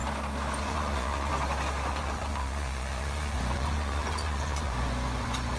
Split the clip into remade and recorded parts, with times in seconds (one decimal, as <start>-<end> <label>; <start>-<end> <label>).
0.0-0.6 recorded; 0.6-1.3 remade; 1.3-1.9 recorded; 1.9-5.6 remade